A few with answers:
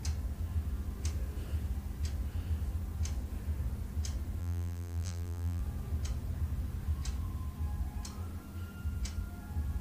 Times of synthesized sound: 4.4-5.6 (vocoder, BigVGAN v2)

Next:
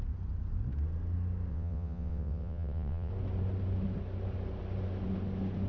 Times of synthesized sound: 1.5-3.1 (vocoder, WaveNeXt)

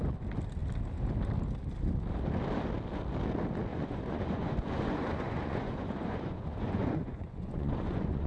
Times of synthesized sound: 3.7-8.3 (vocoder, Vocos)

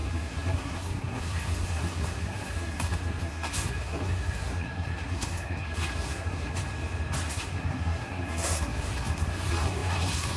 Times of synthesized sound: 0.0-6.6 (codec, SNAC); 7.3-10.4

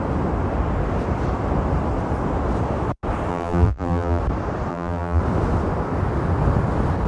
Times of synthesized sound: 3.3-4.2 (vocoder, BigVGAN v2); 4.7-5.2

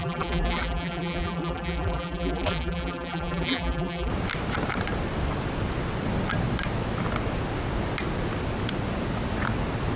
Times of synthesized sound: 0.0-4.1 (vocoder, BigVGAN v2)

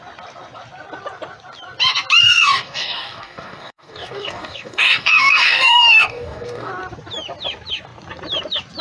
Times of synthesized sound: 2.2-6.7 (codec, DAC)